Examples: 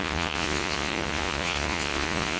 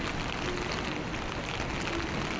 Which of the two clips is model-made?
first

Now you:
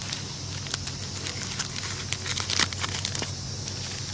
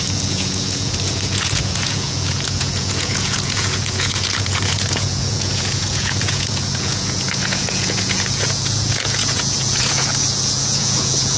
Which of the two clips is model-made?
second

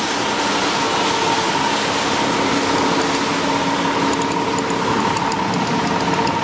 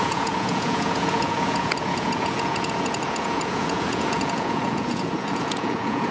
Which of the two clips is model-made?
second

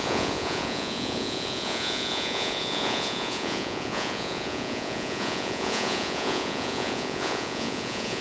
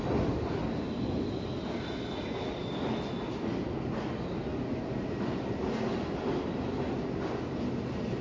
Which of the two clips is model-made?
first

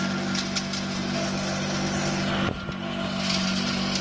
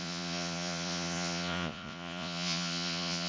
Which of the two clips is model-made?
second